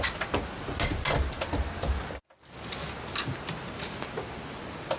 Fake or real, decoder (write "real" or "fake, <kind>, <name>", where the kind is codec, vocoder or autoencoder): real